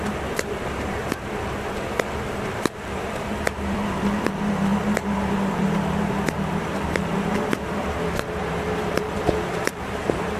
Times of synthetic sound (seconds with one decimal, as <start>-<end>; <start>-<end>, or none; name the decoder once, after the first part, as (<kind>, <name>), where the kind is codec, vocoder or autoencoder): 0.0-10.4 (vocoder, BigVGAN v2)

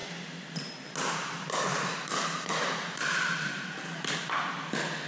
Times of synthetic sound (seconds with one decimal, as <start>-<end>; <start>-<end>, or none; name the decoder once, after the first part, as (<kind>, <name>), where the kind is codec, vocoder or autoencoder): 0.0-0.7 (vocoder, BigVGAN v2); 1.7-4.6

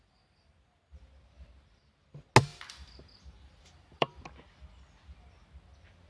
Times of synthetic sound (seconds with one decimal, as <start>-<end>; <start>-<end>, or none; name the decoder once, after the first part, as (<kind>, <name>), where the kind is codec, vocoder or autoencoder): 2.5-4.2 (vocoder, BigVGAN v2)

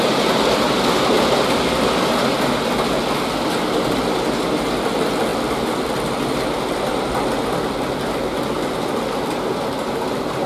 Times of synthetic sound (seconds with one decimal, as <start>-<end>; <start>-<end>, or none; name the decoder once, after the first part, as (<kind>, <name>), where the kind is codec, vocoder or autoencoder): none

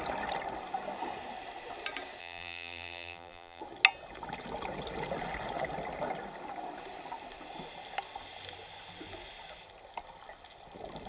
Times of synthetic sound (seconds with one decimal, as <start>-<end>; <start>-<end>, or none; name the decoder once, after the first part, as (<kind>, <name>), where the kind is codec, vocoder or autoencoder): 2.2-3.6 (vocoder, BigVGAN v2)